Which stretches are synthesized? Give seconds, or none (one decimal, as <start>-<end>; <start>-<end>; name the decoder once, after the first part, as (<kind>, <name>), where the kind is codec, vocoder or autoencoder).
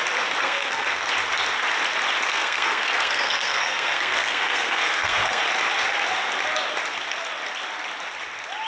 0.4-1.1 (codec, SNAC); 2.3-5.4